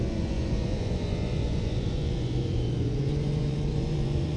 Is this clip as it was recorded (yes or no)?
no